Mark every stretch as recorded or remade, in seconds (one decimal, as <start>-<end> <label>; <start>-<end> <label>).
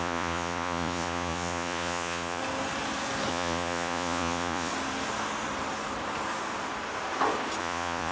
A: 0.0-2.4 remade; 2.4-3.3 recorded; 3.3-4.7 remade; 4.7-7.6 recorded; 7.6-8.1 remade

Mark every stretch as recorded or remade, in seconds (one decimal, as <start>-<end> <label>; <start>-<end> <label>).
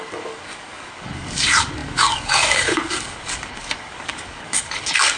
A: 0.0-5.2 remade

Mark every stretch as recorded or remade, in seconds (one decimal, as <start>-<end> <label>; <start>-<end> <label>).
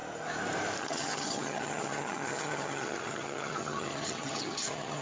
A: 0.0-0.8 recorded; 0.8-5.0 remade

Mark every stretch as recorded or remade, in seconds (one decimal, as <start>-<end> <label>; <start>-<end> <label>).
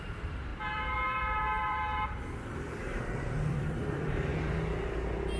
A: 0.0-4.3 remade; 4.3-5.4 recorded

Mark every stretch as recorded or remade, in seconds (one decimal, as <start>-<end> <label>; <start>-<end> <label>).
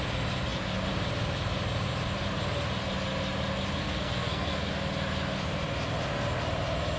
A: 0.0-3.8 recorded; 3.8-4.7 remade; 4.7-7.0 recorded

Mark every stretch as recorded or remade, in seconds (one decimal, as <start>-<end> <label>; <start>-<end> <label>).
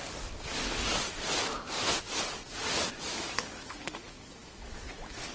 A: 0.0-3.0 recorded; 3.0-5.3 remade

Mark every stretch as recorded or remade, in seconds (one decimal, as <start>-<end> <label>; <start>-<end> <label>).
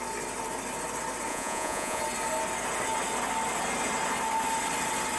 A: 0.0-1.3 recorded; 1.3-2.0 remade; 2.0-5.2 recorded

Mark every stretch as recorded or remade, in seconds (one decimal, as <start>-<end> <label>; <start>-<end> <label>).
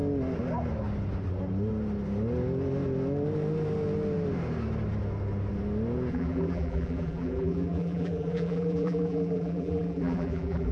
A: 0.0-6.1 recorded; 6.1-10.7 remade